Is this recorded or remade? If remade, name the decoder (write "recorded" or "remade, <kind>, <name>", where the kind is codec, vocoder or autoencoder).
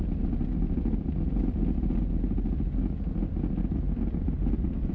recorded